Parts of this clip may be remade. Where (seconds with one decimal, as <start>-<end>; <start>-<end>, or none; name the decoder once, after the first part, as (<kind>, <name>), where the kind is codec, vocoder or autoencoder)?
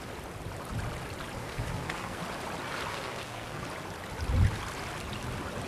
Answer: 1.4-2.2 (codec, SNAC); 2.9-3.6